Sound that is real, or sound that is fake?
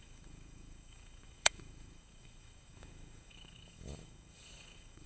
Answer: fake